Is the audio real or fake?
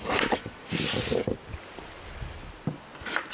real